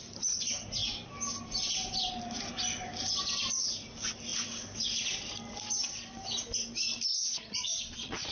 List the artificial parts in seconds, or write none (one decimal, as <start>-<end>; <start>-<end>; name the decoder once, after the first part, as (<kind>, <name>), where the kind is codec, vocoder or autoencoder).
7.1-8.3 (vocoder, Vocos)